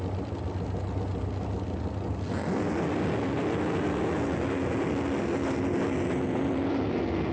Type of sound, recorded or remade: recorded